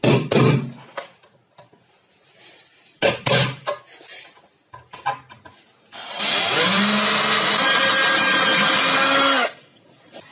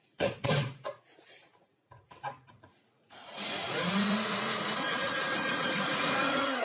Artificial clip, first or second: second